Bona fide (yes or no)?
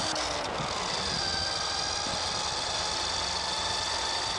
yes